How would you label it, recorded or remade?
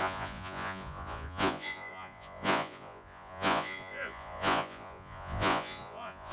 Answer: remade